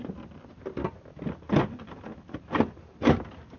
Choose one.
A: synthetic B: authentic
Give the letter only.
B